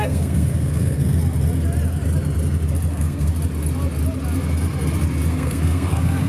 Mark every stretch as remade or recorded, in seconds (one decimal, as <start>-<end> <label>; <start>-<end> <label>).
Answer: 0.0-1.2 remade; 1.2-2.9 recorded; 2.9-3.3 remade; 3.3-5.3 recorded; 5.3-6.3 remade

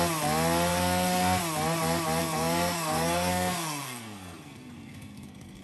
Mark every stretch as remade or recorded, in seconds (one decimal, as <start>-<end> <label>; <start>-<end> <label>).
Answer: 0.0-0.7 recorded; 0.7-1.4 remade; 1.4-2.2 recorded; 2.2-5.6 remade